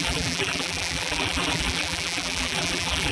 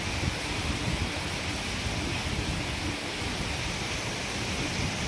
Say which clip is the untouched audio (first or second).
second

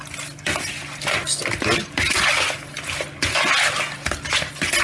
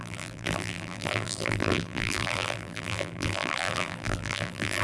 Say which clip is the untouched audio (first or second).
first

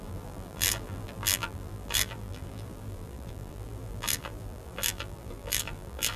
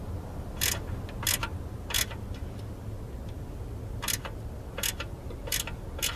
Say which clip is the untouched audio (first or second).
second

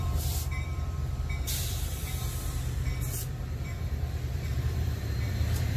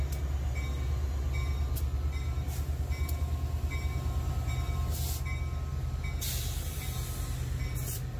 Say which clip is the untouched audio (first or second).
second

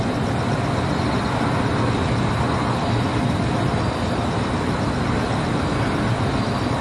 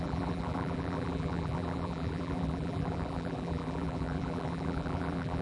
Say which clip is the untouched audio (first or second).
first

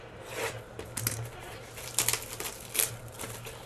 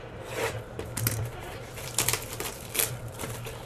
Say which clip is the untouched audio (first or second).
first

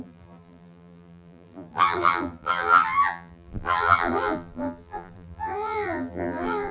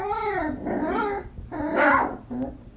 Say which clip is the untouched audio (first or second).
second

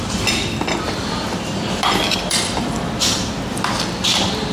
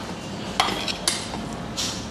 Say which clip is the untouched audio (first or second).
second